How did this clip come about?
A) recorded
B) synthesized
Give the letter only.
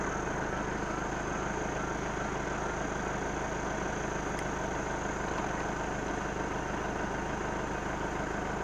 A